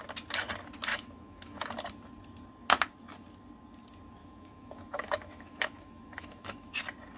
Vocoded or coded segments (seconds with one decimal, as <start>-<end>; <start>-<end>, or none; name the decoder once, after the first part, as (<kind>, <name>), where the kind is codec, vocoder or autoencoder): 0.9-1.7 (autoencoder, DAC-VAE); 4.2-6.7